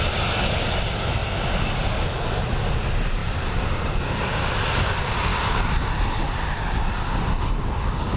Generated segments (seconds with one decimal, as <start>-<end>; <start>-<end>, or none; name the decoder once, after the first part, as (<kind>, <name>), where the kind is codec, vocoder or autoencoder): 3.2-4.0 (vocoder, BigVGAN v2)